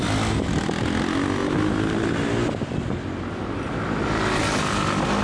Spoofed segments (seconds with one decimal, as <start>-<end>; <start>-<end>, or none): none